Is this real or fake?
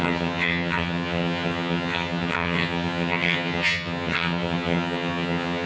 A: fake